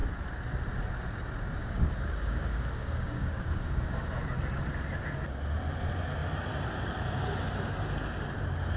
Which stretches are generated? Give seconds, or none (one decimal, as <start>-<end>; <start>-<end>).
1.6-4.0